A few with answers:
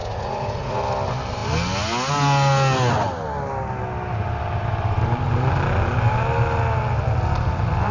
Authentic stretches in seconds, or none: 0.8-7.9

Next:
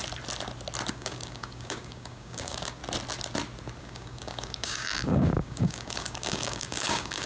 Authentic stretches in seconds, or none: 0.0-0.9; 2.8-3.8

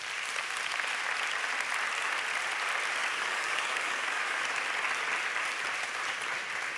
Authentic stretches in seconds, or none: 0.0-3.0; 4.4-6.8

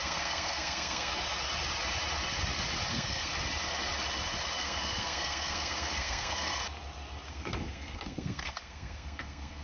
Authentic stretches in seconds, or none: 1.1-2.9; 3.3-4.6; 6.6-7.3